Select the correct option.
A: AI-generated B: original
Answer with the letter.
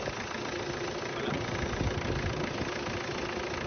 B